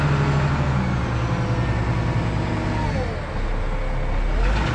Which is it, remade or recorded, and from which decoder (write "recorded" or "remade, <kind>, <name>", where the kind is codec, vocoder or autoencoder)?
recorded